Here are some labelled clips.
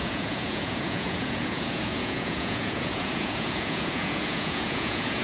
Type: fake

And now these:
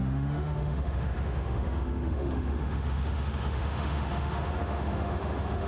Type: fake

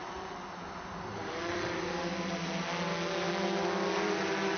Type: real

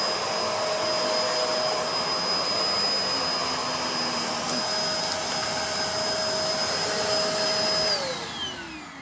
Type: real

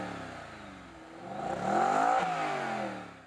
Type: real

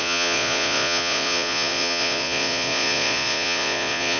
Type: fake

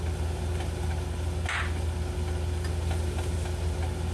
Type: real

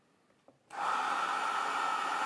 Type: real